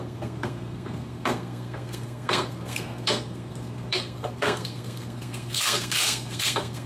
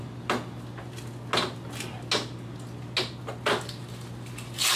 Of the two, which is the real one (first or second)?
second